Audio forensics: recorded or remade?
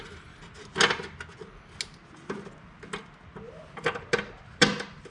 recorded